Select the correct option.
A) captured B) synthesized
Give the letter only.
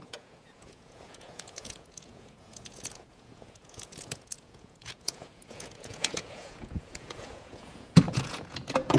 B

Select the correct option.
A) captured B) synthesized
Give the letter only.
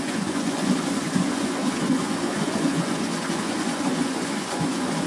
B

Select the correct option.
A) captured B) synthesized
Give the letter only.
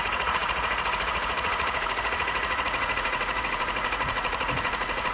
B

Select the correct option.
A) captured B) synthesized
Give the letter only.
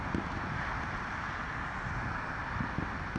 A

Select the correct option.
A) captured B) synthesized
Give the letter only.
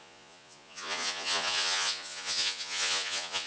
B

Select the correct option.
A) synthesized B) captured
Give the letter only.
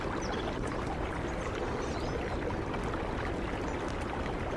B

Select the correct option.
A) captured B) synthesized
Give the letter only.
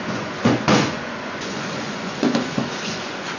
B